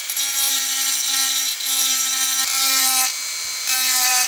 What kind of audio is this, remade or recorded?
remade